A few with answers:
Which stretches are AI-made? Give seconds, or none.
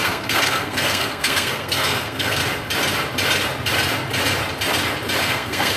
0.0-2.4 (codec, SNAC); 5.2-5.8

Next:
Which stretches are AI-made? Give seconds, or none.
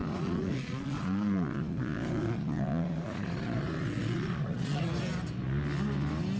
0.0-4.9 (vocoder, Vocos)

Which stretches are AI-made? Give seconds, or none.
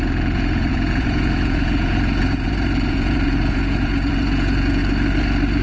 0.0-4.8 (vocoder, Vocos)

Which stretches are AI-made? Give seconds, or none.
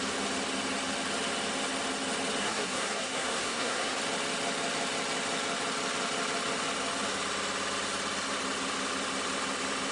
2.4-4.0 (codec, SNAC)